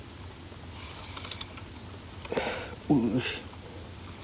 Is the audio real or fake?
real